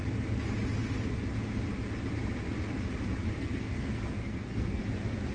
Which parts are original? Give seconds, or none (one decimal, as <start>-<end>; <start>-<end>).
0.0-3.4; 4.8-5.3